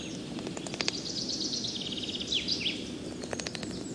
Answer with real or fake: real